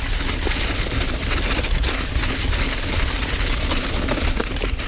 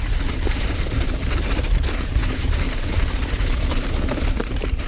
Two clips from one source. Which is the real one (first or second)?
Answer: first